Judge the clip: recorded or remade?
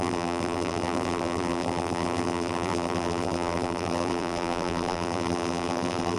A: remade